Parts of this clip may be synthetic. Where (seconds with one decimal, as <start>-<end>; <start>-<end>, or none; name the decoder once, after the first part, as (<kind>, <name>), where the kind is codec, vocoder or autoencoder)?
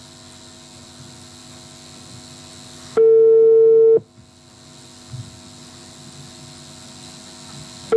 none